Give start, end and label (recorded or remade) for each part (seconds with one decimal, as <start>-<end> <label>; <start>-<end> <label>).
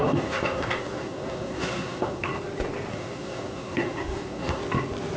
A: 0.0-2.3 remade; 2.3-2.9 recorded; 2.9-4.6 remade; 4.6-5.2 recorded